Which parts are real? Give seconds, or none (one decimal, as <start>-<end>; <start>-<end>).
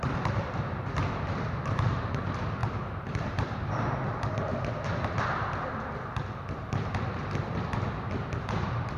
4.5-8.4